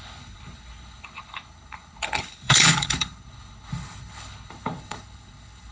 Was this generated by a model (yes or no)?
yes